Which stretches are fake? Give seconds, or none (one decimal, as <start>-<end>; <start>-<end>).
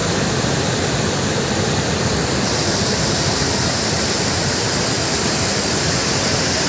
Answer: 0.0-5.0; 6.1-6.7